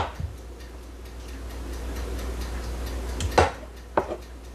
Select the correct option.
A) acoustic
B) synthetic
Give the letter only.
A